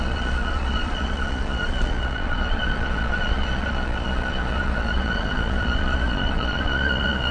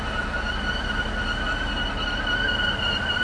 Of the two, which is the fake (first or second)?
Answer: first